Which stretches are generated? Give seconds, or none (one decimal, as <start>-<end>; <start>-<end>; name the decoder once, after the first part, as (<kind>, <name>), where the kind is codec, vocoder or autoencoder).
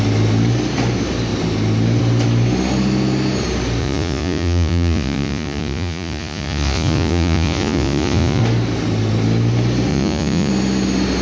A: 3.8-8.4 (vocoder, Vocos); 9.9-10.5